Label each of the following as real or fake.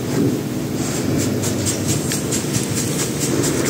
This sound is real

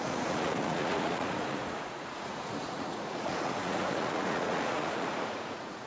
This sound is fake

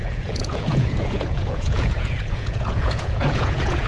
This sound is fake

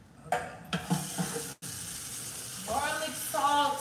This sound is real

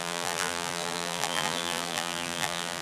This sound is fake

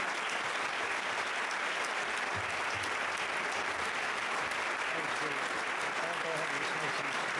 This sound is real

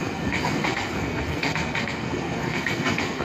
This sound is fake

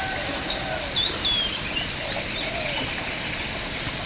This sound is real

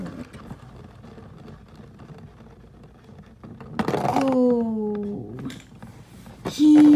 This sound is real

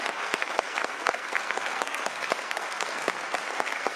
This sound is fake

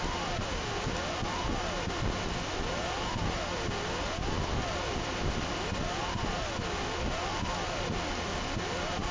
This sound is real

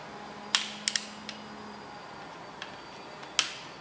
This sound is real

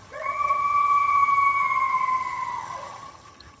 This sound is fake